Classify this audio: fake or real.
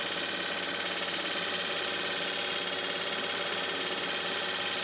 real